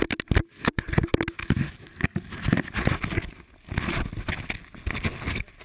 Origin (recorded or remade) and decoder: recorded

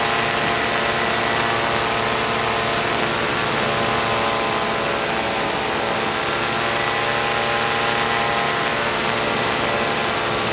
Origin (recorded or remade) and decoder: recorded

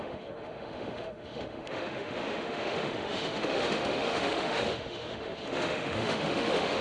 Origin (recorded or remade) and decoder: remade, autoencoder, DAC-VAE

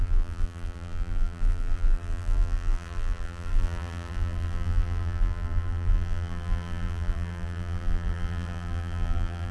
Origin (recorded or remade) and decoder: remade, vocoder, BigVGAN v2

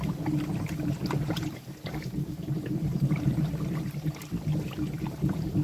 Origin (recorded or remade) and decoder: remade, vocoder, BigVGAN v2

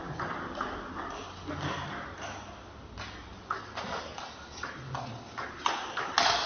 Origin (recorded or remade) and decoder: recorded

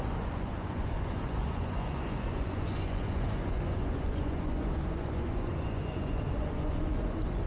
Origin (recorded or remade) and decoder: remade, vocoder, Vocos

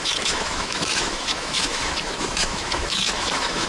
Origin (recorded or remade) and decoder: remade, autoencoder, DAC-VAE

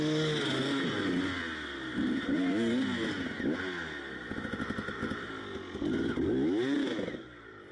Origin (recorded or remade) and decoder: recorded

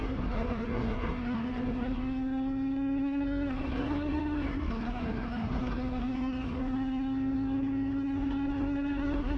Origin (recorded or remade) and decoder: remade, codec, SNAC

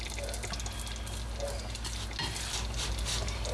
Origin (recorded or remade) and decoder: recorded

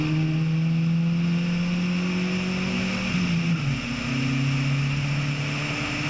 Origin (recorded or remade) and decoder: recorded